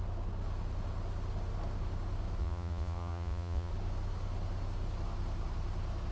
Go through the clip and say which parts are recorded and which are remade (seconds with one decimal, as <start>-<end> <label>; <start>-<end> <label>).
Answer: 0.0-2.4 recorded; 2.4-3.7 remade; 3.7-6.1 recorded